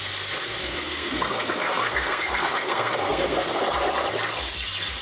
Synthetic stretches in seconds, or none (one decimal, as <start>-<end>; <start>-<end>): 0.6-3.6